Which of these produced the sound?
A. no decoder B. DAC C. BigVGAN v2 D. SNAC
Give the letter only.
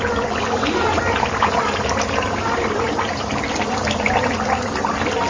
A